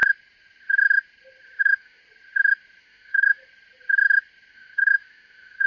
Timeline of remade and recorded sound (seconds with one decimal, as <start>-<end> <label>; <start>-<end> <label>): 0.0-1.6 recorded; 1.6-2.0 remade; 2.0-2.8 recorded; 2.8-3.4 remade; 3.4-4.5 recorded; 4.5-5.7 remade